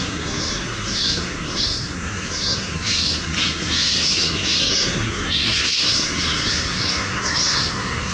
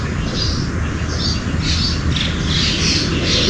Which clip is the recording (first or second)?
second